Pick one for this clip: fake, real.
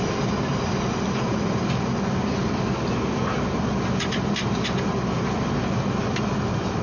real